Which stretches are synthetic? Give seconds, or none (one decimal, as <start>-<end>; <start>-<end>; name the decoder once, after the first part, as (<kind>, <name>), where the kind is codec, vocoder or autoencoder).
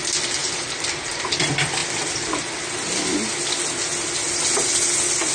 0.4-1.3 (vocoder, BigVGAN v2)